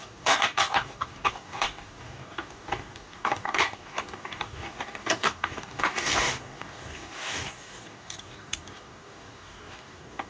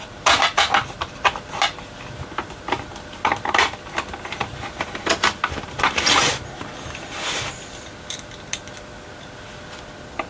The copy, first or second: first